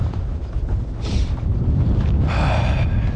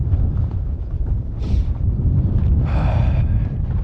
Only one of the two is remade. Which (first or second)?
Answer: second